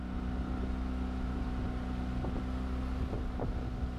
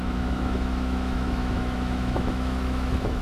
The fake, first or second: second